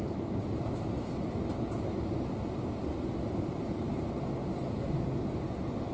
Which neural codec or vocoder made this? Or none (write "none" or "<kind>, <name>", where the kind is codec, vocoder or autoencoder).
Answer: none